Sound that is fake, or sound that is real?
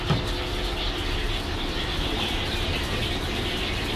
real